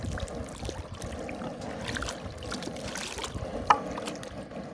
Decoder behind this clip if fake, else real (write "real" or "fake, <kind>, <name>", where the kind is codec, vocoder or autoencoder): real